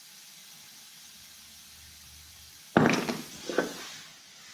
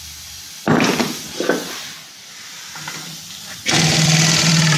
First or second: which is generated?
second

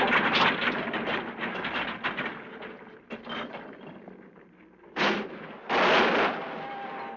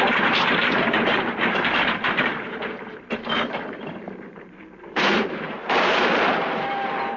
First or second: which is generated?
second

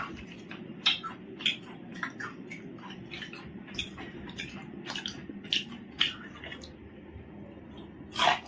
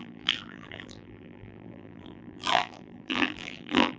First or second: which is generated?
second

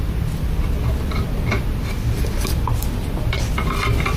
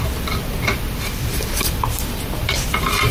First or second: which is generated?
second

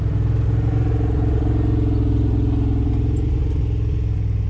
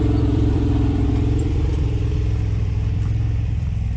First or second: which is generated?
second